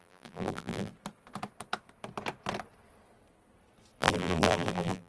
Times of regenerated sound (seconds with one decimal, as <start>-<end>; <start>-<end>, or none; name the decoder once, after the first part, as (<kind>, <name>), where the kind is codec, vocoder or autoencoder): 0.0-0.9 (vocoder, BigVGAN v2); 4.0-5.1